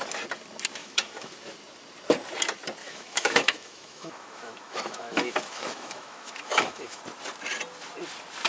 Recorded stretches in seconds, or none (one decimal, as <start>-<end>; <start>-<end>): 0.0-0.8; 1.3-2.8; 7.0-8.5